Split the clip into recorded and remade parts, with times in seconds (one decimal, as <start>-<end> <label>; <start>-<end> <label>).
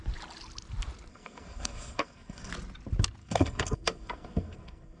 0.0-1.1 recorded; 1.1-2.5 remade; 2.5-3.2 recorded; 3.2-5.0 remade